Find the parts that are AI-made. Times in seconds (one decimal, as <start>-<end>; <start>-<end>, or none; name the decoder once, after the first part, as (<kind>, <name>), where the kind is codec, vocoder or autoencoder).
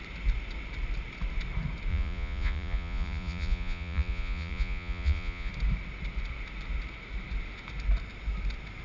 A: 1.9-5.5 (vocoder, Vocos)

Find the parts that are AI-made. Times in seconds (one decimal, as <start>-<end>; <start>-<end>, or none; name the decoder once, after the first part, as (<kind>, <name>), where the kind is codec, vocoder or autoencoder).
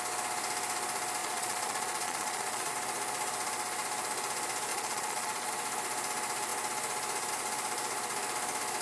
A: 1.2-2.7 (vocoder, Vocos); 4.7-5.5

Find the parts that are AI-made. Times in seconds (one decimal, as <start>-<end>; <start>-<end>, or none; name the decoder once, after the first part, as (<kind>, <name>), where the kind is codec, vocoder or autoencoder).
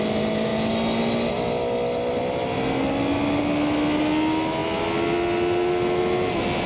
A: none